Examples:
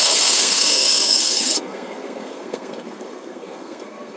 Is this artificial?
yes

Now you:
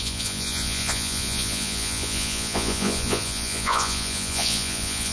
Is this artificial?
yes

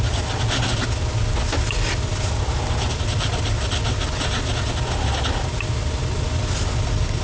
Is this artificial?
no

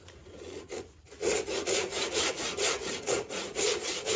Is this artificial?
yes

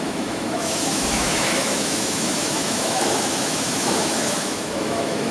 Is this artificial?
yes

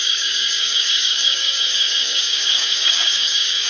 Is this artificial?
yes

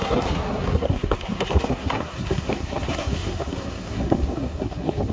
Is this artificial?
yes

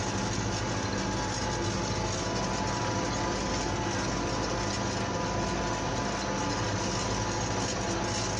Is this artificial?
no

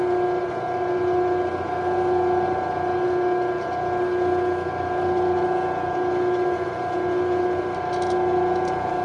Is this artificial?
no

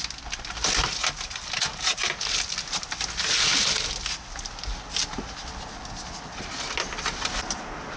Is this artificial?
no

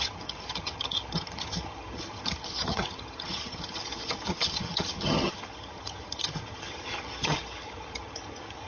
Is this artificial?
yes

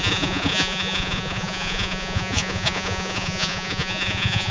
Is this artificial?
yes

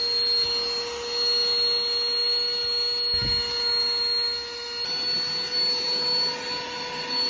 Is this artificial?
no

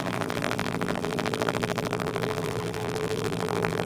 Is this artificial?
yes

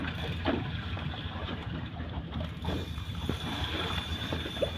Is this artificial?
yes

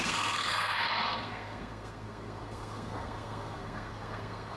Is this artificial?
yes